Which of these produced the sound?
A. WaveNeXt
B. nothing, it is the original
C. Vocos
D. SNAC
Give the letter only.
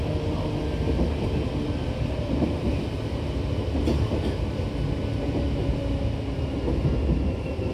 B